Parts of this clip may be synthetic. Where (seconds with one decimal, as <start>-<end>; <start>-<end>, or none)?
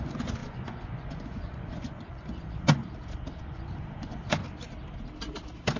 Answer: 0.0-2.8; 3.4-4.4